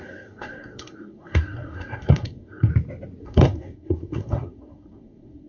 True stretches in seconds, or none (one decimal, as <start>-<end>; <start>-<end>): 2.7-3.2